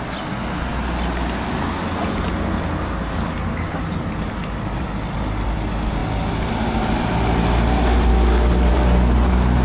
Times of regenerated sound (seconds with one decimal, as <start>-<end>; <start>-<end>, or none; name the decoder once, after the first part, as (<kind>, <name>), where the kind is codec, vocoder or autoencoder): none